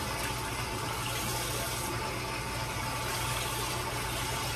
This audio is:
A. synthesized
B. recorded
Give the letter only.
B